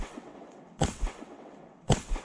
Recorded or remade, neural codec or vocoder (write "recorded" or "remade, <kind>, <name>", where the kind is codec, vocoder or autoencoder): remade, vocoder, WaveNeXt